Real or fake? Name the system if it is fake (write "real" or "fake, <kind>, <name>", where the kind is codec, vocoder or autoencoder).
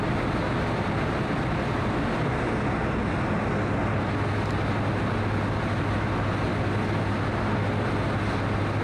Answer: real